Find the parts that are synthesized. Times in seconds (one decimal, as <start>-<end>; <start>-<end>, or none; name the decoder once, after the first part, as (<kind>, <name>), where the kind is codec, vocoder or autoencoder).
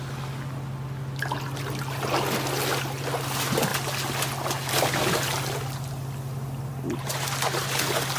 none